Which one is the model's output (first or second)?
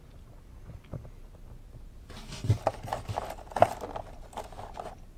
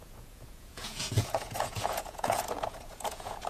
second